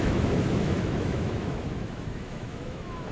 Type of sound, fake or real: fake